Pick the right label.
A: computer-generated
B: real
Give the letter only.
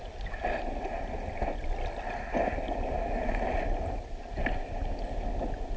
B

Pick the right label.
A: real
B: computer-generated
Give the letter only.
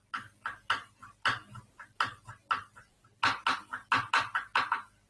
A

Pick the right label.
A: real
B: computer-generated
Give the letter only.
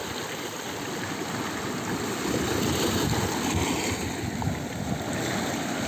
A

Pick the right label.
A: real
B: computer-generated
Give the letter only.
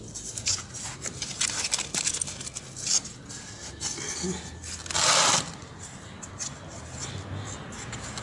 A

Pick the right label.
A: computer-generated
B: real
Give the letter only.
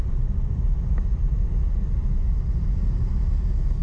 B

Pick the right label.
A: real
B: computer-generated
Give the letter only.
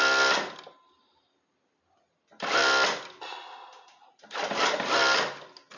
A